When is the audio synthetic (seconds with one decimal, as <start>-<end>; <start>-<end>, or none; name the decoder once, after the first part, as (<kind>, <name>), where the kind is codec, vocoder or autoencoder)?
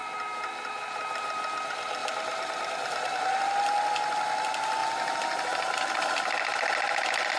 2.0-3.4 (vocoder, BigVGAN v2); 4.8-5.7